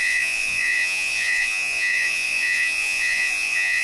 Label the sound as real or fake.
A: fake